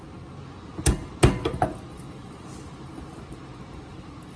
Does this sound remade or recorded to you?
recorded